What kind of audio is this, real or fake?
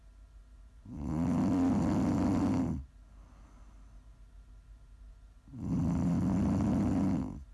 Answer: real